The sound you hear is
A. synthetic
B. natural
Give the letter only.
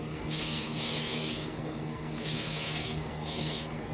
A